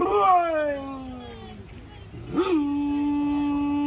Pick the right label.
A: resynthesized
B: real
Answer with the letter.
B